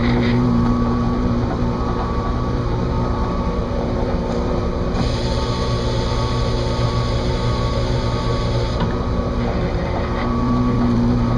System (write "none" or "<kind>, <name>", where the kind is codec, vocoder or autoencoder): vocoder, BigVGAN v2